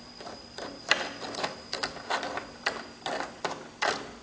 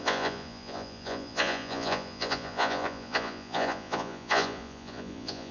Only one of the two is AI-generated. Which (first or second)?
second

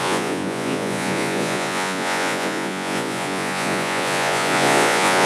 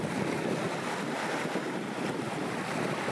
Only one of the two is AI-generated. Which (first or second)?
first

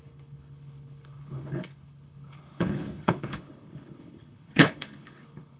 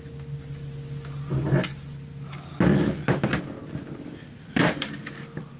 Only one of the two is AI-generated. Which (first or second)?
first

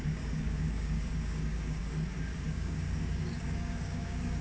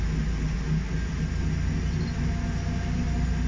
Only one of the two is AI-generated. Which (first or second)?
first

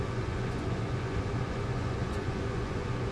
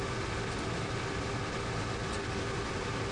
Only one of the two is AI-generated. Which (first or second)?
first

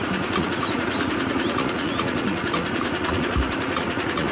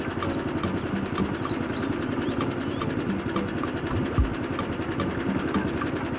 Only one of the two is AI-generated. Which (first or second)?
first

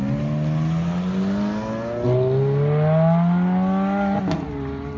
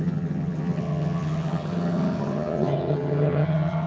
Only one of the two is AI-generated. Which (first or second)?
second